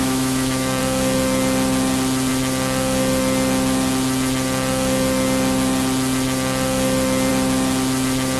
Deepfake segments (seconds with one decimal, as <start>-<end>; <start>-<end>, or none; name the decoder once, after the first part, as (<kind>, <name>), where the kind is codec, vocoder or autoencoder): 0.0-0.8 (autoencoder, DAC-VAE)